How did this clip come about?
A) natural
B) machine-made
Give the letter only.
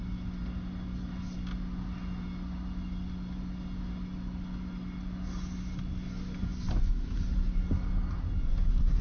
A